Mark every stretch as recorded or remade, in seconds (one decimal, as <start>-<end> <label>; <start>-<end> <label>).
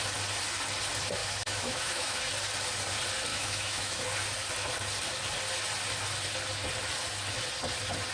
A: 0.0-1.2 recorded; 1.2-2.2 remade; 2.2-3.3 recorded; 3.3-4.0 remade; 4.0-8.1 recorded